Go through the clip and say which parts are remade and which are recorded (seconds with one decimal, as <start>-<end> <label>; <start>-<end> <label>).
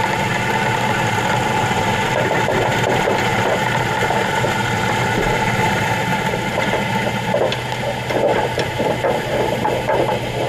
0.0-2.7 recorded; 2.7-7.4 remade; 7.4-8.3 recorded; 8.3-10.5 remade